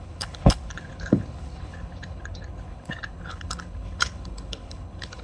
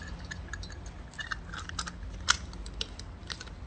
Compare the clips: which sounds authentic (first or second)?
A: second